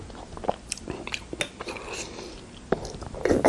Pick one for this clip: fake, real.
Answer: real